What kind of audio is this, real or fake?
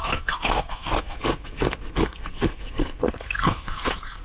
fake